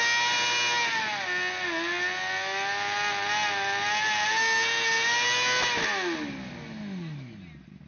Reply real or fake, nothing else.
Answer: real